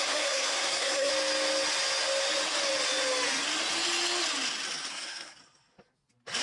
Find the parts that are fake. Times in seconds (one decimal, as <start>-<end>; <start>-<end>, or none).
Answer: 0.0-1.1; 4.9-5.4